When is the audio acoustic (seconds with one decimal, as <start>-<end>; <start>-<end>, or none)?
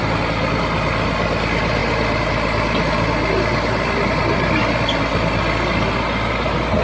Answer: 0.0-6.8